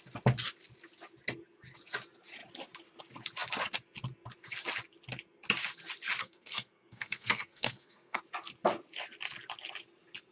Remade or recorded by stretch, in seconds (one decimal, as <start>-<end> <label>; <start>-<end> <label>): 0.0-6.2 recorded; 6.2-8.2 remade; 8.2-10.3 recorded